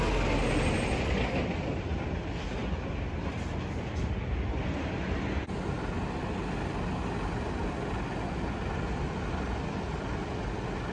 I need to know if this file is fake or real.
real